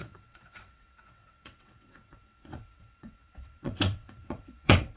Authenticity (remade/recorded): remade